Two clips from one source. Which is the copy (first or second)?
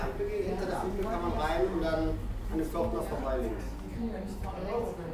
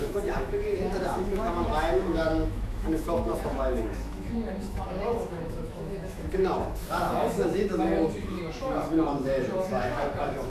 second